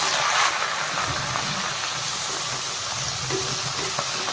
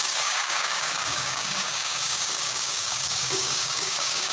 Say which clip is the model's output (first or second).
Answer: second